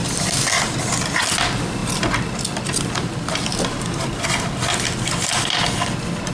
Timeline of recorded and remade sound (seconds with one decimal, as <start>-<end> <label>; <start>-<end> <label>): 0.0-6.3 recorded